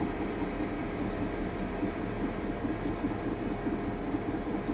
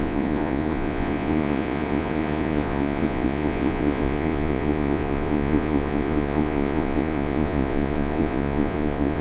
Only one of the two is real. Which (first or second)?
first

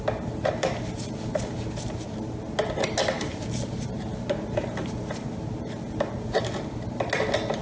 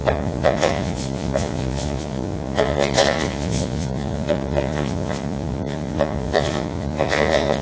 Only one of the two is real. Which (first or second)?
first